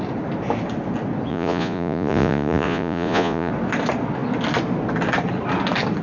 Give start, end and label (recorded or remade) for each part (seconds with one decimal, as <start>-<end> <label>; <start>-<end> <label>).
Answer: 0.0-1.3 recorded; 1.3-3.5 remade; 3.5-6.0 recorded